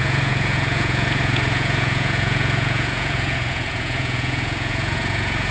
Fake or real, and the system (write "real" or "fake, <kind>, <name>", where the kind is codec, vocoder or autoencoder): fake, vocoder, Vocos